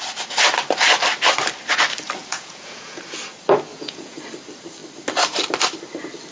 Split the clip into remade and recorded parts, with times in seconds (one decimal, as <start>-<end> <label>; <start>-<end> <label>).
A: 0.0-2.2 recorded; 2.2-3.0 remade; 3.0-3.7 recorded; 3.7-4.2 remade; 4.2-6.3 recorded